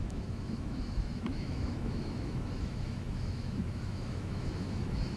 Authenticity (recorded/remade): remade